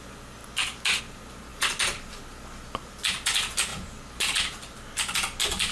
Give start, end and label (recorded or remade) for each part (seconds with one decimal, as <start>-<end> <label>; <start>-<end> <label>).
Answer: 0.0-5.7 recorded